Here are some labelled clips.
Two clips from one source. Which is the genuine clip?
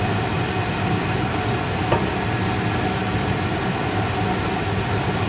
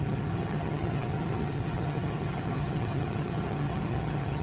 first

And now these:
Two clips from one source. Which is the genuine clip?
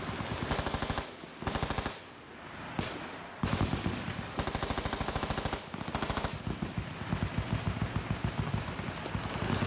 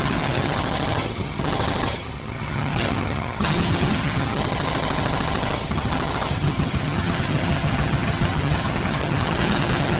first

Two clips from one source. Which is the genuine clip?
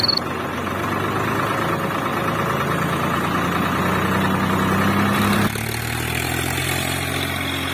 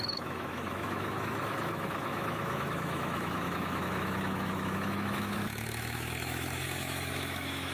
first